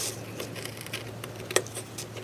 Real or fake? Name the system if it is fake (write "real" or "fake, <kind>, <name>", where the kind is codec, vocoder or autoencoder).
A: real